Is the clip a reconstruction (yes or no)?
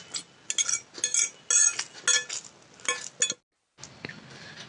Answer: no